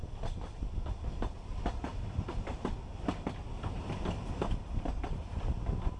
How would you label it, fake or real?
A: real